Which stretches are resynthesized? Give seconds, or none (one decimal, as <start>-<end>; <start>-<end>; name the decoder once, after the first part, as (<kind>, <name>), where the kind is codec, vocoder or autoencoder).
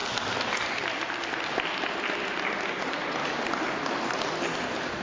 2.8-3.2 (vocoder, BigVGAN v2)